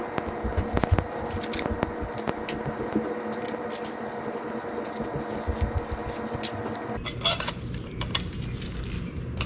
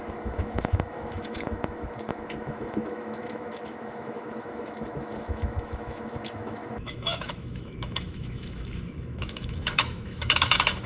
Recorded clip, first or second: first